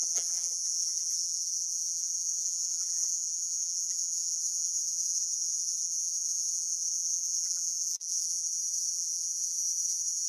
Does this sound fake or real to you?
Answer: fake